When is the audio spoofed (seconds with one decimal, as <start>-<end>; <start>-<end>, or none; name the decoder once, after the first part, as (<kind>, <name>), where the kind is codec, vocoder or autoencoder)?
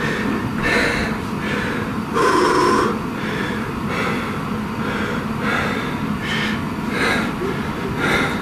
1.9-3.9 (vocoder, BigVGAN v2)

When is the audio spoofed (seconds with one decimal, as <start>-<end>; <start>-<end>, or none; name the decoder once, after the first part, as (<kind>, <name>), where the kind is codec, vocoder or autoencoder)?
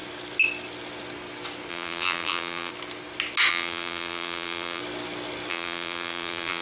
1.7-2.7 (vocoder, BigVGAN v2); 3.5-4.8; 5.5-6.6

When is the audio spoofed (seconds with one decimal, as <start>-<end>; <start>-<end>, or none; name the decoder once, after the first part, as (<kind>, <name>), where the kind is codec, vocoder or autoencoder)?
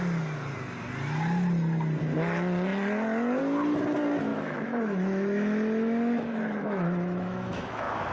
4.3-8.1 (autoencoder, DAC-VAE)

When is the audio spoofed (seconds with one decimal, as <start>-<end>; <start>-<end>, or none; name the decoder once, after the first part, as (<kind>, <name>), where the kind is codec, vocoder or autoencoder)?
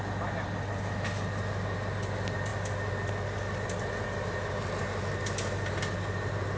none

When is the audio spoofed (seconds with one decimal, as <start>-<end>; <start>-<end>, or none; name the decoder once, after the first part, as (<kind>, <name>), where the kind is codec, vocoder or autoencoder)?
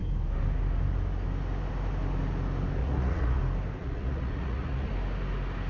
2.8-3.4 (vocoder, Vocos); 3.8-4.9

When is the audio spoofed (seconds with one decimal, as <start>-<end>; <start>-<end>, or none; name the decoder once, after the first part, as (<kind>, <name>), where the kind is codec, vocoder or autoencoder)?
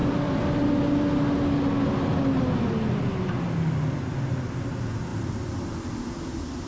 none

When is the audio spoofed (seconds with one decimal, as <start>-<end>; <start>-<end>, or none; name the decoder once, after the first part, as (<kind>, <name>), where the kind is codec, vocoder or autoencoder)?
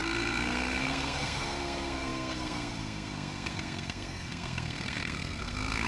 0.0-5.9 (codec, SNAC)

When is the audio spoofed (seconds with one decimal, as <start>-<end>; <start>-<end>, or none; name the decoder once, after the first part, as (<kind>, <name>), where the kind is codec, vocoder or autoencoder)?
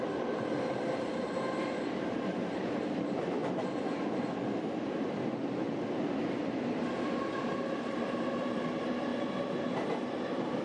0.0-3.4 (vocoder, BigVGAN v2); 4.2-10.6